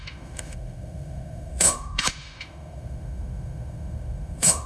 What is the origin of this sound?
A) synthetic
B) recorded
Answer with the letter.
A